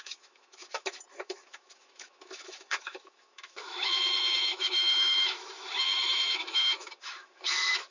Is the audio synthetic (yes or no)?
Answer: yes